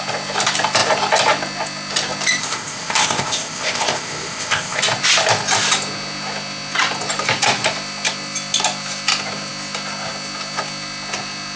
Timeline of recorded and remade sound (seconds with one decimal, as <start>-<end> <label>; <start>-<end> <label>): 0.0-2.4 recorded; 2.4-4.8 remade; 4.8-11.6 recorded